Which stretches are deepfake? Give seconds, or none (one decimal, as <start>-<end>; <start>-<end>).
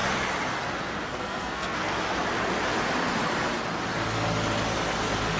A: 1.1-1.9